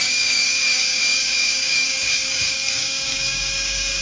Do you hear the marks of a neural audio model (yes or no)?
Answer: yes